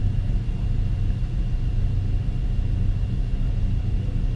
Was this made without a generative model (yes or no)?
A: yes